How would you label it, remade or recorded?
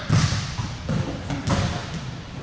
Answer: recorded